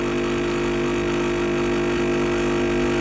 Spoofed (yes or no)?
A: no